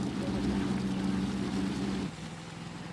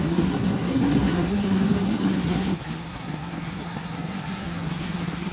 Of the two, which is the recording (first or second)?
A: first